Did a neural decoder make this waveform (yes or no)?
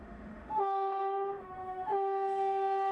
yes